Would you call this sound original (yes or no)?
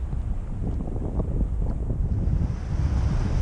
yes